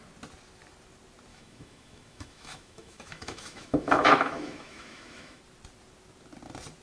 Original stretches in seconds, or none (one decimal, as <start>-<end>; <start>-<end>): 0.0-1.3; 5.4-6.8